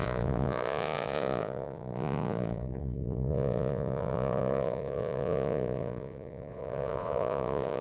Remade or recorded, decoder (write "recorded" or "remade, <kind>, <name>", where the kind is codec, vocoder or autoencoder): remade, vocoder, Vocos